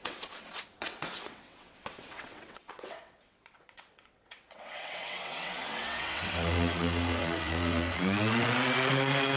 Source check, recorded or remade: remade